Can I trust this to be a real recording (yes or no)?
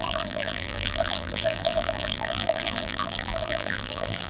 no